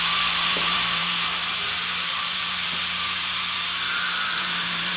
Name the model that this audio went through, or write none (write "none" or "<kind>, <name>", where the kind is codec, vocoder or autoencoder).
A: vocoder, BigVGAN v2